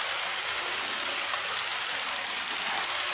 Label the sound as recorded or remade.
recorded